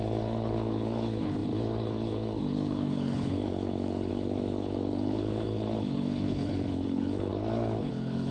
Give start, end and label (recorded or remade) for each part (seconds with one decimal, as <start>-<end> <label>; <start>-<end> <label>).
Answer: 0.0-8.3 remade